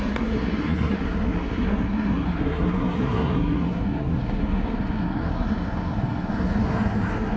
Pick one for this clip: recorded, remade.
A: remade